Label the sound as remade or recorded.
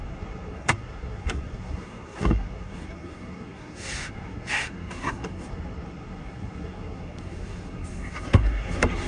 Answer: remade